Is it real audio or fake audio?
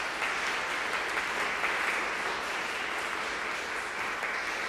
real